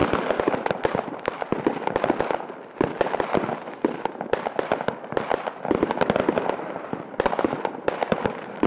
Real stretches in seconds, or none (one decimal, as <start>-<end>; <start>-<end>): 0.0-0.6; 1.5-5.9